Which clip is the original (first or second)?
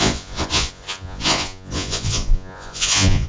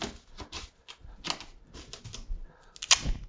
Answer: second